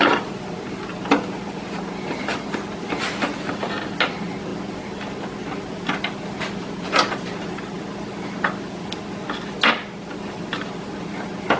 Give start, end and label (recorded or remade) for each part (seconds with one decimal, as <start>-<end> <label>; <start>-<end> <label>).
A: 0.0-11.6 recorded